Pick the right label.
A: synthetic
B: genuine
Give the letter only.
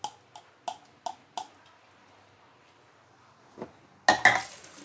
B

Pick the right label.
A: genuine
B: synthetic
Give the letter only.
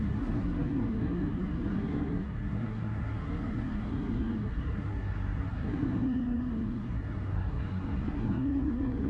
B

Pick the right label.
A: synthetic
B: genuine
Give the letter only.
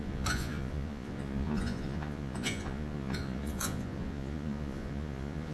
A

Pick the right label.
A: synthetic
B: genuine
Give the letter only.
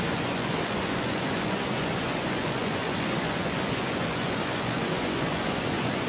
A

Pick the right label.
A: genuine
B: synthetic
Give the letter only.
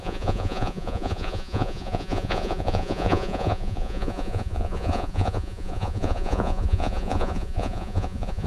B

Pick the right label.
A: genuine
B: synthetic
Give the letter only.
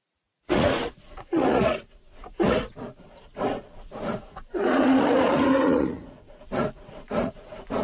B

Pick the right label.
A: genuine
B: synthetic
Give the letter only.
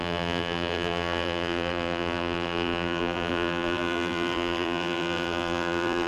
B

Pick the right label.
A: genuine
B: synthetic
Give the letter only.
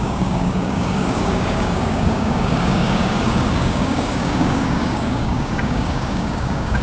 B